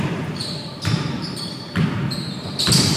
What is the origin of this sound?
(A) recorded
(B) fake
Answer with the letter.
B